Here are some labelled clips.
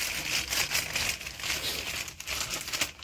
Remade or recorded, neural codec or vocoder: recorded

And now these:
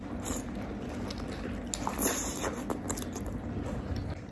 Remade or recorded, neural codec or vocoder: recorded